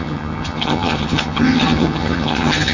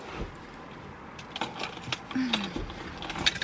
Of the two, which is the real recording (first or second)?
second